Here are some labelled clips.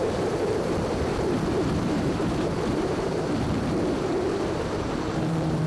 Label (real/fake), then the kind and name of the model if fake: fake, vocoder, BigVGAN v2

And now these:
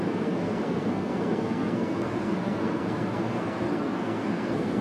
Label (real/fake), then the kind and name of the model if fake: fake, codec, SNAC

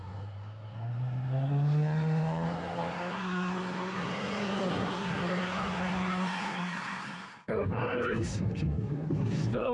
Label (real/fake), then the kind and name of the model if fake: fake, codec, SNAC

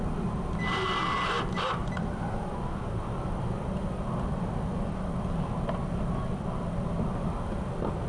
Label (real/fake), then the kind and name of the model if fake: real